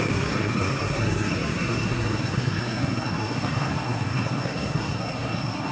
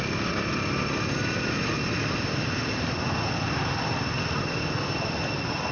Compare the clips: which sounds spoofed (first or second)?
first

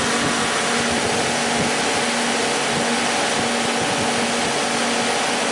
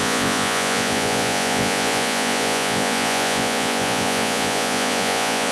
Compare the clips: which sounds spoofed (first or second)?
second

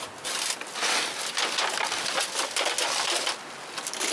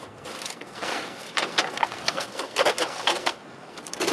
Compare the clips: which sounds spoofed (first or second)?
second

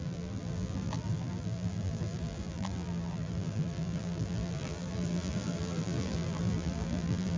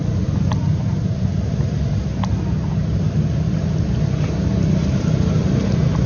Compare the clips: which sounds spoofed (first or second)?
first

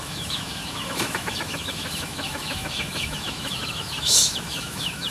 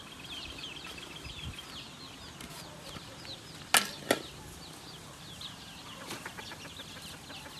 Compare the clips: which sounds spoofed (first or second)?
first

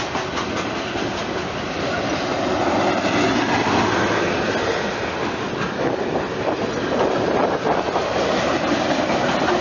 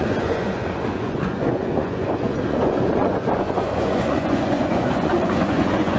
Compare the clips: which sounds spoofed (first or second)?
second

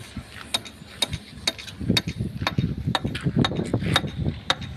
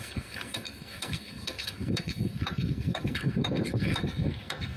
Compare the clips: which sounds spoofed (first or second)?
second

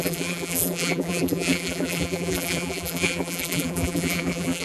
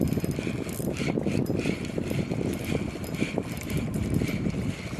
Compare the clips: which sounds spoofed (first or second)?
first